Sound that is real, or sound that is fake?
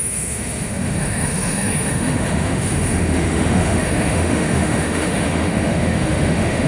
fake